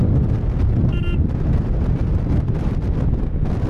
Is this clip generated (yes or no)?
no